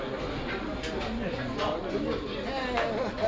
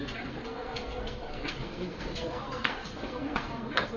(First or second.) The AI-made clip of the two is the second